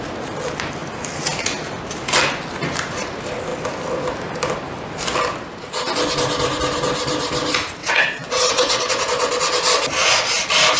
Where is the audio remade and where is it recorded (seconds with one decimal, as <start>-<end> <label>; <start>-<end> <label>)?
0.0-7.8 recorded; 7.8-8.9 remade; 8.9-10.8 recorded